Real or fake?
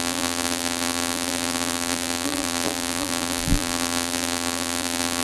fake